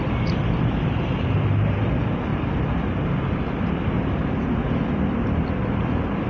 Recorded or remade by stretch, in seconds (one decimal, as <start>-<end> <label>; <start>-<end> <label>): 0.0-2.3 recorded; 2.3-6.3 remade